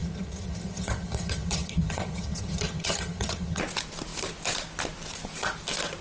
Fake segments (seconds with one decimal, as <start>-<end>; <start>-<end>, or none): 0.0-3.6